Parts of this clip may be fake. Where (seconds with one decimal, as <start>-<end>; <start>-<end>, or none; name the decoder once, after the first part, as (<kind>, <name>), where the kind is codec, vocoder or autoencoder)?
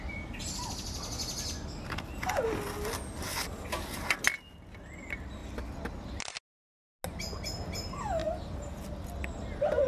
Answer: none